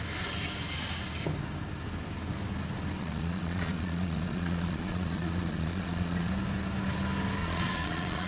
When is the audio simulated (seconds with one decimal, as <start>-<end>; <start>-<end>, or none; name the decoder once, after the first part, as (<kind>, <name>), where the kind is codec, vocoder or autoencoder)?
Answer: 3.0-6.3 (vocoder, Vocos); 7.4-8.3